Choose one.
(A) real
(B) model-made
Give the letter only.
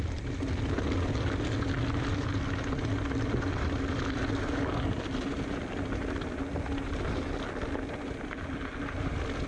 A